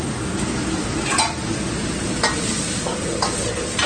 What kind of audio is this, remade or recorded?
recorded